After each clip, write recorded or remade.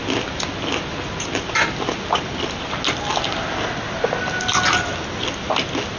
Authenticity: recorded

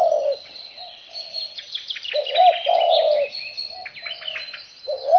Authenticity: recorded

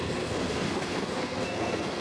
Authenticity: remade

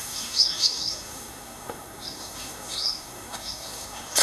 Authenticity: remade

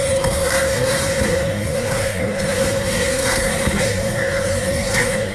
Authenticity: remade